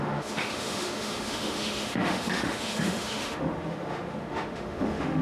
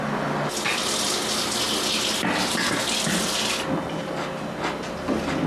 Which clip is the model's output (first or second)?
first